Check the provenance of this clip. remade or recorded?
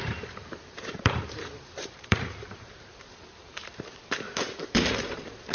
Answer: remade